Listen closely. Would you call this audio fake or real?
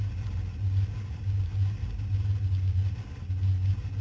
real